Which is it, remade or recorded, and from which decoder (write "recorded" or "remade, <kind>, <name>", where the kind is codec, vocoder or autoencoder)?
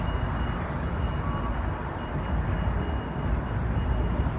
recorded